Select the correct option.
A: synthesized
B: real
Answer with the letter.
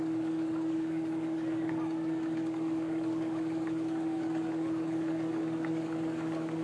A